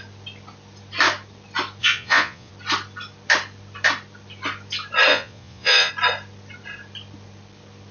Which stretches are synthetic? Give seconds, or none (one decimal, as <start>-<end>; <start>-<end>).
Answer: 1.8-2.5; 5.1-5.9